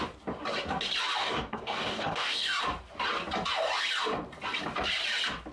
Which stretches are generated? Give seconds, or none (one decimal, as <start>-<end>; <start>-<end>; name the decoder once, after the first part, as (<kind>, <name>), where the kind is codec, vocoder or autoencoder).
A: 1.2-2.6 (codec, DAC)